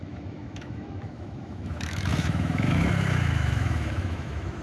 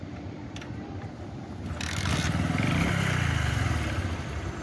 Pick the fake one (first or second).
first